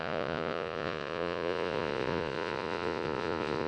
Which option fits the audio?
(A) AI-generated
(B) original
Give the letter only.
A